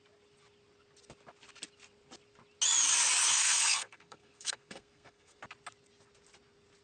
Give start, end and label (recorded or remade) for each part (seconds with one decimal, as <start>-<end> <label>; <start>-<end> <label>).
0.0-3.3 recorded; 3.3-5.4 remade; 5.4-6.8 recorded

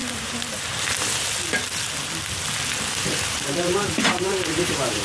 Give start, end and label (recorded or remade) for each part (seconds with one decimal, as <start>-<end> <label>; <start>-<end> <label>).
0.0-3.0 recorded; 3.0-5.0 remade

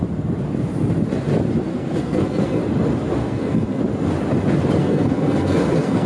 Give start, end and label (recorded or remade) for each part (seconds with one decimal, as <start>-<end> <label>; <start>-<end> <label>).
0.0-1.7 recorded; 1.7-2.6 remade; 2.6-3.2 recorded; 3.2-3.8 remade; 3.8-4.8 recorded; 4.8-6.1 remade

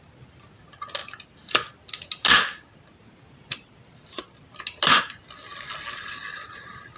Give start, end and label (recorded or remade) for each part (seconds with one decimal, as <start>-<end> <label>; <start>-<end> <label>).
0.0-7.0 recorded

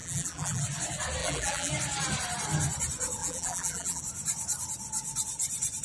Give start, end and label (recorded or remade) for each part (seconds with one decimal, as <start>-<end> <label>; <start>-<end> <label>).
0.0-0.6 remade; 0.6-1.2 recorded; 1.2-1.7 remade; 1.7-3.2 recorded; 3.2-4.0 remade; 4.0-5.8 recorded

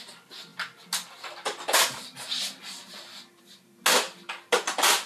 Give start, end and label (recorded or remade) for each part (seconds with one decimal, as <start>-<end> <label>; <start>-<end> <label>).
0.0-5.1 recorded

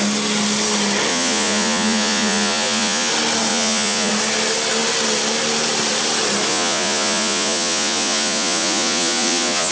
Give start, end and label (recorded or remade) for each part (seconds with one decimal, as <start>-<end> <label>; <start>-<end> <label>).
0.0-1.1 recorded; 1.1-3.1 remade; 3.1-3.5 recorded; 3.5-4.1 remade; 4.1-6.5 recorded; 6.5-9.7 remade